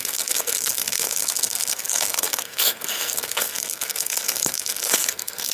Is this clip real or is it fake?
fake